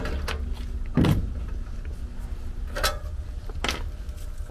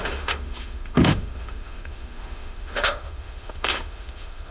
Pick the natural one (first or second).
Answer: first